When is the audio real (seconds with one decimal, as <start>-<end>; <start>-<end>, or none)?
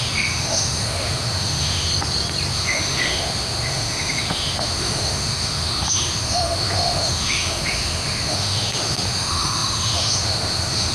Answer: 1.9-2.5